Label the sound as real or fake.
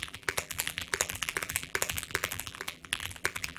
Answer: fake